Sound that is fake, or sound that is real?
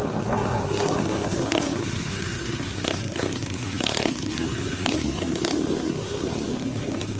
fake